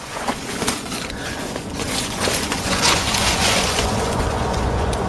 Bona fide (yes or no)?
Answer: no